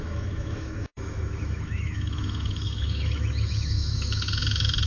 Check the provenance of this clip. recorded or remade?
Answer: remade